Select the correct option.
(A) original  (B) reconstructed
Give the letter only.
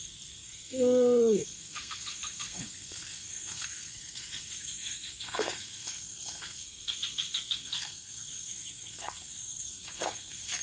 B